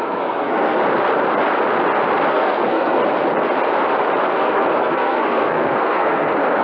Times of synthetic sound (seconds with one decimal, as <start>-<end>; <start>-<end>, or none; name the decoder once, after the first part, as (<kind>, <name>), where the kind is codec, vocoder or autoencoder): 0.0-0.8 (codec, SNAC); 2.3-3.0; 4.3-6.6